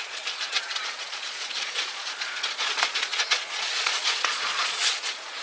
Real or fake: fake